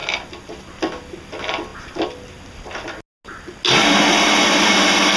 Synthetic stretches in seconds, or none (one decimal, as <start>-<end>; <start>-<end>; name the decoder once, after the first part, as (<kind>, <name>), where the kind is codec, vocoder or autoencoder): none